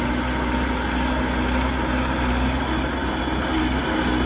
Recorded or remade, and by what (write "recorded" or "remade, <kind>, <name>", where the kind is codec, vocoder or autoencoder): recorded